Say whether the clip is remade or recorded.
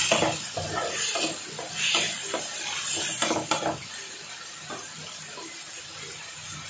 recorded